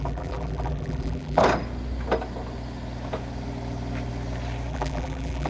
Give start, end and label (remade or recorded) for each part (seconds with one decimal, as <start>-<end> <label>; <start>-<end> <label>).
0.0-1.4 remade; 1.4-4.7 recorded; 4.7-5.5 remade